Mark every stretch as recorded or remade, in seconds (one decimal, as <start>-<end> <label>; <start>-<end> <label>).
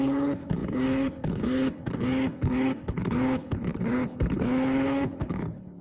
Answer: 0.0-5.8 remade